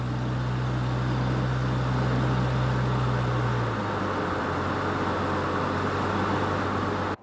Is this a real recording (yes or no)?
yes